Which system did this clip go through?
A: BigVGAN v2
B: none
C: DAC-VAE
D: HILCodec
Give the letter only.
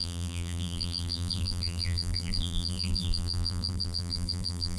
A